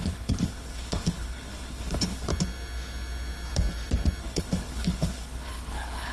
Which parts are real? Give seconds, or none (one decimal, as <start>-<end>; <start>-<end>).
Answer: 2.3-4.2